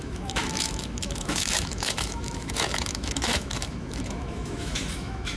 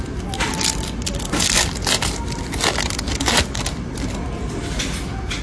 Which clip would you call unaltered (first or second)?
second